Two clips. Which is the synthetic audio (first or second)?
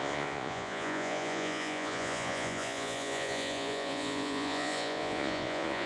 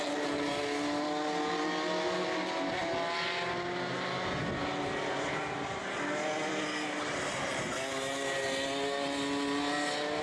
first